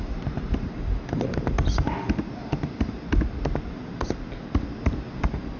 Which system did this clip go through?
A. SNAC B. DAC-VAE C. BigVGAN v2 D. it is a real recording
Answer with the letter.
D